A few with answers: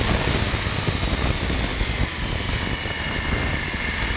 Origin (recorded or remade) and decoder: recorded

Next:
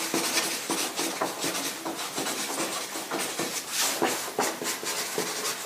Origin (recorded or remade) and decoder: recorded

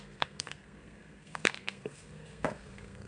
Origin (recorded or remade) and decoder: remade, codec, SNAC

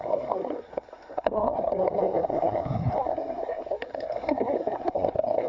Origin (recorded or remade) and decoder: remade, codec, SNAC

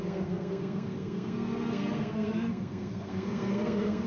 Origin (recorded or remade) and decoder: remade, codec, SNAC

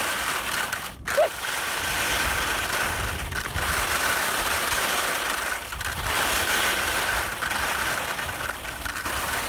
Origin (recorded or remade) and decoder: recorded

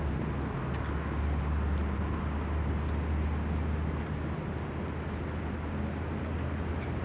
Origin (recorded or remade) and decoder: recorded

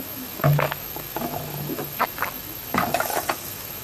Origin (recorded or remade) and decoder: remade, autoencoder, DAC-VAE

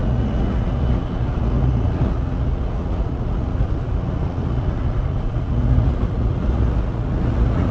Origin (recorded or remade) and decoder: remade, vocoder, Vocos